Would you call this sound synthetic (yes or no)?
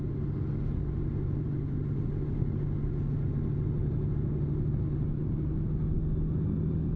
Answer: no